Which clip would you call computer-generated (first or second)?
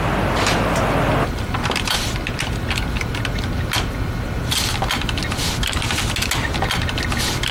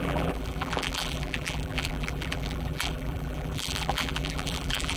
second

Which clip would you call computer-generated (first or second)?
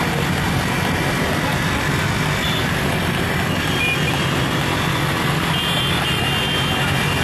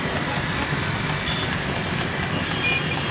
second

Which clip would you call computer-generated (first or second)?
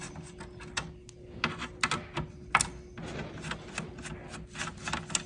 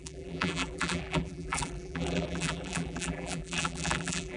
second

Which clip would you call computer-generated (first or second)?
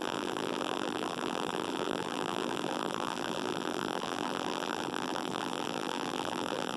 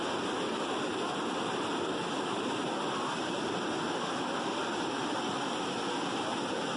first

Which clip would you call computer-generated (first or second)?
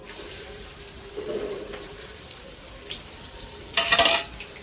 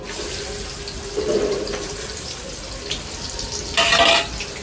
first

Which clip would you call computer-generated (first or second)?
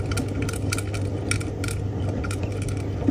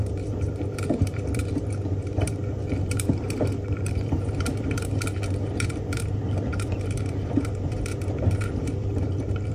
second